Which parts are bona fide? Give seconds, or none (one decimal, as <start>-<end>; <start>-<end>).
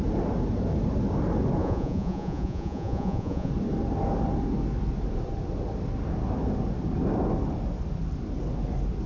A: 0.0-1.6; 3.5-9.1